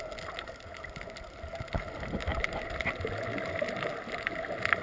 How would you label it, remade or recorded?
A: recorded